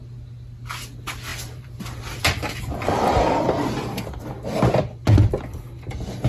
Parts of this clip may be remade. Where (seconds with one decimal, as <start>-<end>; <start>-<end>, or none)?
1.3-4.3